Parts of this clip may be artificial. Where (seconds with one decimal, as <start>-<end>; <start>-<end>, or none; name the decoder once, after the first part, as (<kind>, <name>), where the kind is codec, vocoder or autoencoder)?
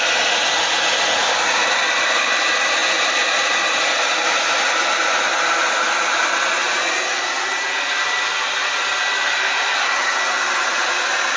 none